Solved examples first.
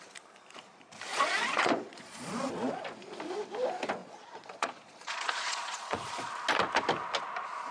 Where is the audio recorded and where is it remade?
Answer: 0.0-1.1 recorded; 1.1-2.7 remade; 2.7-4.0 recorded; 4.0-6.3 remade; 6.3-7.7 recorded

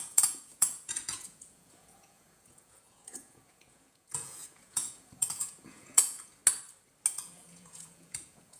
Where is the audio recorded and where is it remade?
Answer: 0.0-6.4 remade; 6.4-7.1 recorded; 7.1-8.6 remade

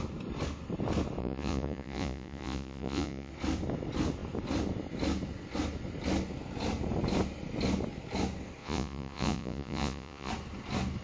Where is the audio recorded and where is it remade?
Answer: 0.0-1.2 recorded; 1.2-3.3 remade; 3.3-8.6 recorded; 8.6-10.3 remade; 10.3-11.0 recorded